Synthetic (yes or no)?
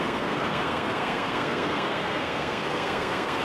yes